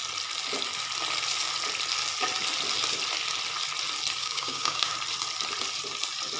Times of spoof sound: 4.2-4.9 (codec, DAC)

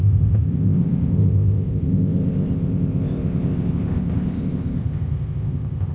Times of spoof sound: 0.0-5.9 (codec, ZipCodec)